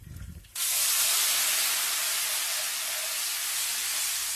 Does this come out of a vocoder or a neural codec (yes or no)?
no